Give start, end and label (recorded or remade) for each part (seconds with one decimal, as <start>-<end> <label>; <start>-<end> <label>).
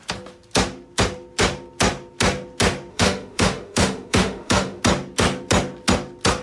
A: 0.0-2.9 recorded; 2.9-4.8 remade; 4.8-6.4 recorded